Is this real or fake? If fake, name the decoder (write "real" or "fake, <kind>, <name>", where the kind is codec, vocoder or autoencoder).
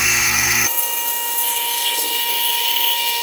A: fake, codec, SNAC